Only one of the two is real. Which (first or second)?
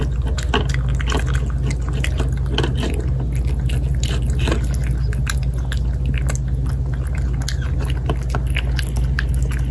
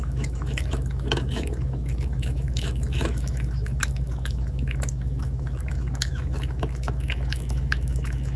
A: first